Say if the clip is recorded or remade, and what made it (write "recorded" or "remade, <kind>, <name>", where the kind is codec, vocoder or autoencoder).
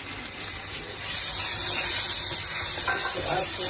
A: recorded